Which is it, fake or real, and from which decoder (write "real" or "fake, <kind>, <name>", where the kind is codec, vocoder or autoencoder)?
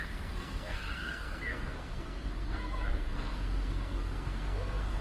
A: fake, codec, SNAC